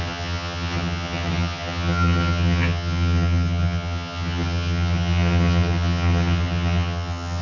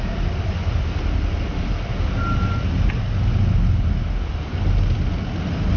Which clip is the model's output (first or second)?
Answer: first